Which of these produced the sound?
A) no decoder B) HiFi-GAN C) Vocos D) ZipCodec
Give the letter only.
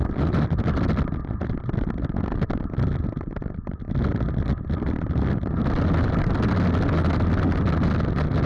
A